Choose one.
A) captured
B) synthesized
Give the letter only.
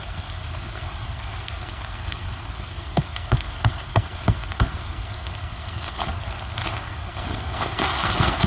B